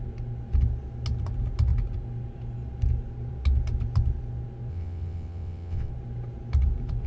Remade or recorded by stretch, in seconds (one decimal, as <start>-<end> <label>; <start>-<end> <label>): 0.0-4.7 recorded; 4.7-5.9 remade; 5.9-7.1 recorded